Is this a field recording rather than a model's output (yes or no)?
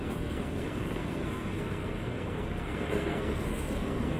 no